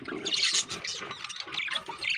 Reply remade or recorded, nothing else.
recorded